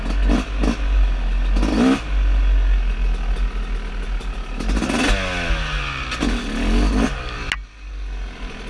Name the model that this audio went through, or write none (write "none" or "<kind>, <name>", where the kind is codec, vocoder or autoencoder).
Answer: none